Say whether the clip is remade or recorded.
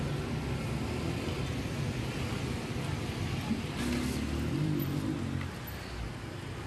recorded